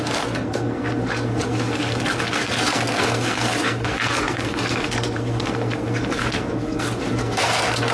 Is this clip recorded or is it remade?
remade